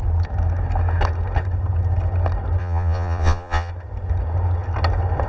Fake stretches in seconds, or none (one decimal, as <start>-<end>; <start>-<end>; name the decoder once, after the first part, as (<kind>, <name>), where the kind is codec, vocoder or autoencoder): 2.6-3.7 (vocoder, Vocos)